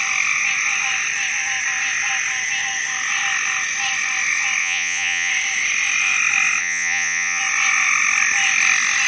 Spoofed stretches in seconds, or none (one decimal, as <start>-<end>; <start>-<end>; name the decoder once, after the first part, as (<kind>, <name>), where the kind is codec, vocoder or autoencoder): 4.6-5.3 (vocoder, Vocos); 6.6-7.4